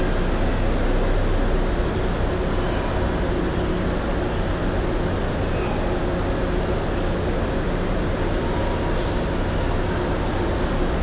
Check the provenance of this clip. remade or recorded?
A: recorded